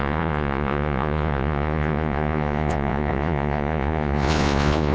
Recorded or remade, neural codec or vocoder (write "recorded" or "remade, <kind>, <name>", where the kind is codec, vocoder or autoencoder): remade, vocoder, Vocos